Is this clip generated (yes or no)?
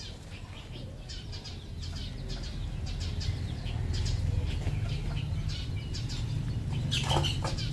no